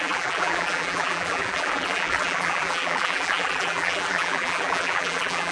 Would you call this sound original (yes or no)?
no